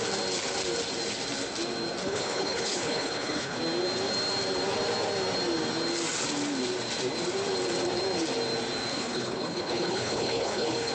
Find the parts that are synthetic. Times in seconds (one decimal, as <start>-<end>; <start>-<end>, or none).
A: 2.0-3.6; 8.9-10.9